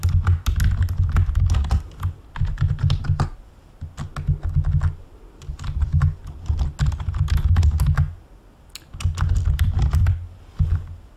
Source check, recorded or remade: recorded